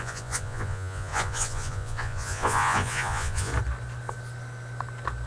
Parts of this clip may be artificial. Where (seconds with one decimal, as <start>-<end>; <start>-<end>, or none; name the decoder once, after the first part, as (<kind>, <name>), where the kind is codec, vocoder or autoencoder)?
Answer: 0.0-3.5 (vocoder, Vocos)